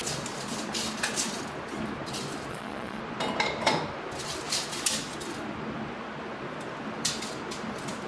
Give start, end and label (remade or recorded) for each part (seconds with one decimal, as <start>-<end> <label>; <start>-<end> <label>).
0.0-2.5 recorded; 2.5-3.0 remade; 3.0-8.1 recorded